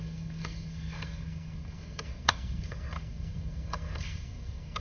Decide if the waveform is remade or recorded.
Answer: remade